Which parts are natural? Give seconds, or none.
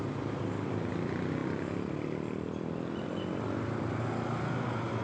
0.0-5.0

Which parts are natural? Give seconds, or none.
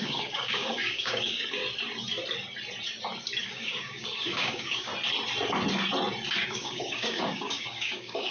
1.6-3.4; 4.9-6.5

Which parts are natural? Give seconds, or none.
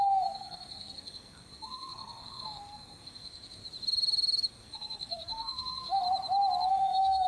3.6-4.5; 6.0-6.7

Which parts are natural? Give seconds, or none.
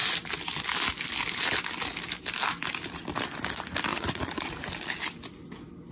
0.0-3.9; 4.7-5.9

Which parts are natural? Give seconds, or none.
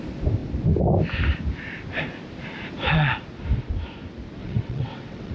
0.0-4.4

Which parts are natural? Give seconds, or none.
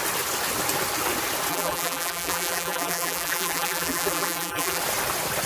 0.0-1.5; 4.8-5.5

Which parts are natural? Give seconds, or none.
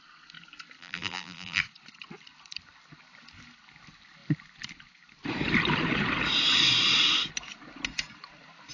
0.0-0.8; 1.6-8.7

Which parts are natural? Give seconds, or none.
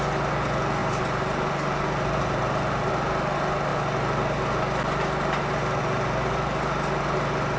0.0-0.8; 2.9-7.6